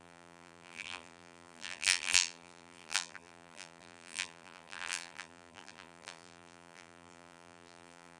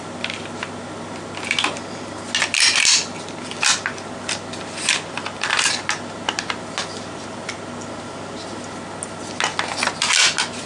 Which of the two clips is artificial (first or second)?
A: first